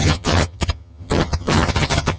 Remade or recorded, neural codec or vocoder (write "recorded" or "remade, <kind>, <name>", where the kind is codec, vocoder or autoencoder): remade, vocoder, HiFi-GAN